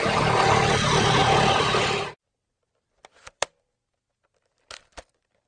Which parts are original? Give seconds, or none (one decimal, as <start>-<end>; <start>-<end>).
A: 0.0-1.2; 3.7-5.5